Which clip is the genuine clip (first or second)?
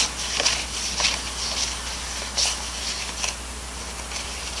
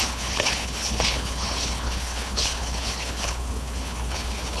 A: first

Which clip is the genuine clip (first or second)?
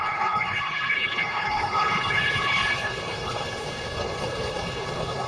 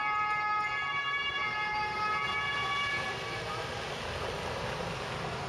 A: second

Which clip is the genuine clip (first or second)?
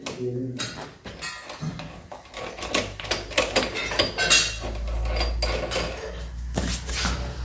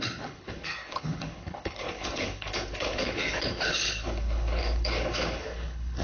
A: first